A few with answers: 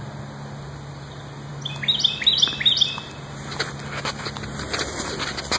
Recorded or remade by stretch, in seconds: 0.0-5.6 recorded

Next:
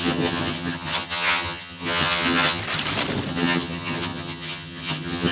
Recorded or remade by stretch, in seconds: 0.0-2.6 remade; 2.6-3.3 recorded; 3.3-5.3 remade

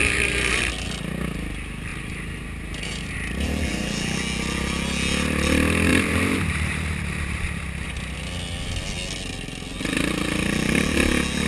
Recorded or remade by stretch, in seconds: 0.0-0.7 remade; 0.7-1.9 recorded; 1.9-4.2 remade; 4.2-5.9 recorded; 5.9-7.5 remade; 7.5-11.5 recorded

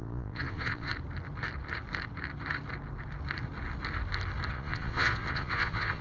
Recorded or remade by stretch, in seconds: 0.0-0.9 remade; 0.9-4.5 recorded; 4.5-6.0 remade

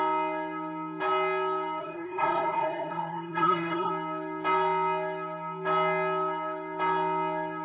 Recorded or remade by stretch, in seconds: 0.0-1.8 recorded; 1.8-3.9 remade; 3.9-7.6 recorded

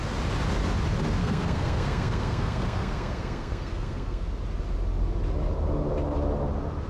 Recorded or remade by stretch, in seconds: 0.0-1.2 recorded; 1.2-4.3 remade; 4.3-6.9 recorded